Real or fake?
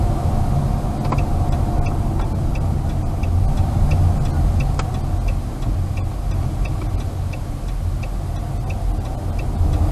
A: real